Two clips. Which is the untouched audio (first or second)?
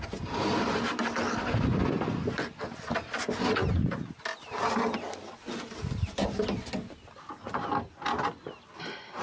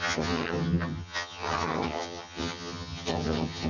first